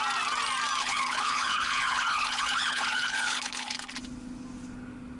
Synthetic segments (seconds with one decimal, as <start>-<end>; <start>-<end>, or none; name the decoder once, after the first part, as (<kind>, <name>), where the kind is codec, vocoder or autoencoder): 0.8-3.9 (codec, HILCodec)